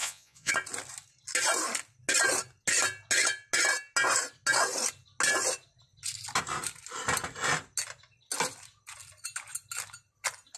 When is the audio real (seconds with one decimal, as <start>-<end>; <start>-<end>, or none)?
0.5-10.6